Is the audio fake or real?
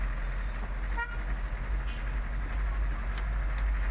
real